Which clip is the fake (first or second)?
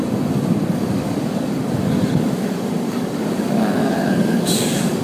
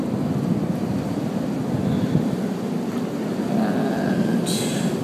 first